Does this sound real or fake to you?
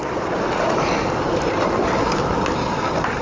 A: fake